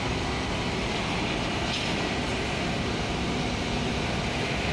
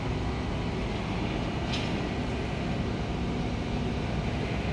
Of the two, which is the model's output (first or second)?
first